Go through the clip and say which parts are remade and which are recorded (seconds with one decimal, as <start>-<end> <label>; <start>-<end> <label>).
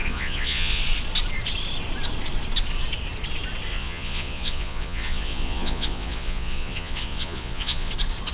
0.0-0.8 remade; 0.8-3.7 recorded; 3.7-7.9 remade; 7.9-8.3 recorded